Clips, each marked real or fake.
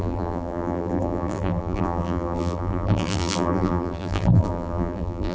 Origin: fake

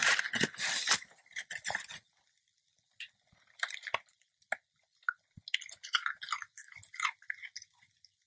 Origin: real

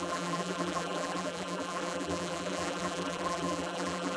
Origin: fake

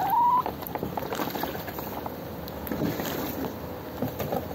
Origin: real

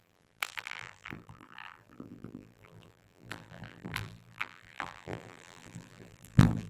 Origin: fake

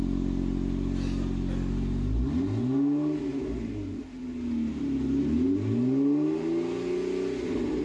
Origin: real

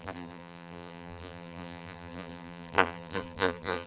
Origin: fake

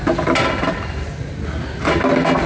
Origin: real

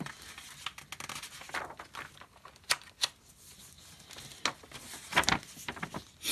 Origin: real